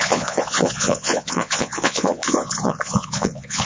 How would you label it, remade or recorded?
remade